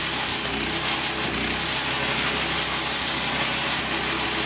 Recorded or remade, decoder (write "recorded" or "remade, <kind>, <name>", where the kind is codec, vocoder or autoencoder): recorded